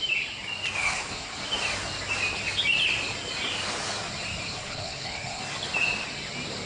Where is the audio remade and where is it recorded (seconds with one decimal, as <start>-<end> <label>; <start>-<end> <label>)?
0.0-0.8 recorded; 0.8-1.4 remade; 1.4-4.5 recorded; 4.5-5.4 remade; 5.4-6.7 recorded